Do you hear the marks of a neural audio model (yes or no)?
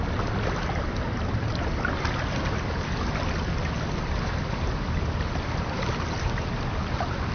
no